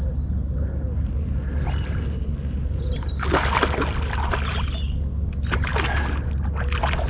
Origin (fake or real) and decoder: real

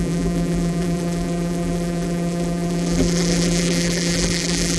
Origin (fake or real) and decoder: fake, vocoder, BigVGAN v2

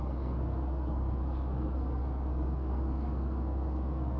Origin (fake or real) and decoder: fake, codec, SNAC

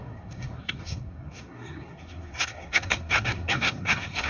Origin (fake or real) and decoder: fake, codec, SNAC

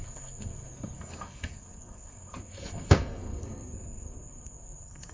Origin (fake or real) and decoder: fake, codec, SNAC